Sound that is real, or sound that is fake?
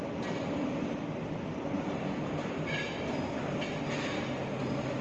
real